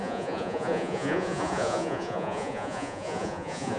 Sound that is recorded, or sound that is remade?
remade